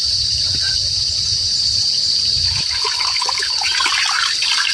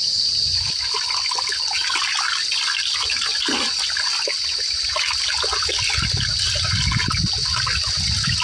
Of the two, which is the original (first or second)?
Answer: second